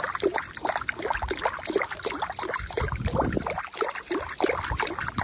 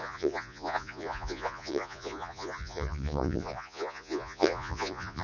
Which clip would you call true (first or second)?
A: first